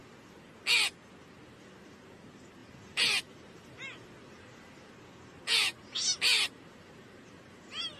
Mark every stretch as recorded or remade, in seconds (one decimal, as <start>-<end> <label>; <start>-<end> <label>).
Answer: 0.0-0.5 remade; 0.5-2.6 recorded; 2.6-4.9 remade; 4.9-8.0 recorded